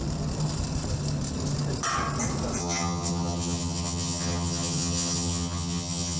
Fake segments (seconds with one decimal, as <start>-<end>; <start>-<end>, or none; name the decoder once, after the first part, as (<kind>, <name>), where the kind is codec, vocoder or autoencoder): 2.6-6.2 (vocoder, HiFi-GAN)